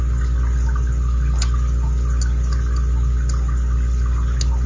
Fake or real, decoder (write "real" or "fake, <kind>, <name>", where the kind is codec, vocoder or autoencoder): real